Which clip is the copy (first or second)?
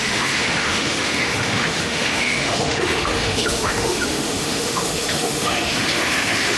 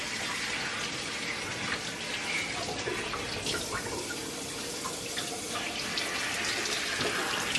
first